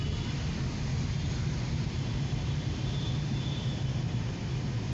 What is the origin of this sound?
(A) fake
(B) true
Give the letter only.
B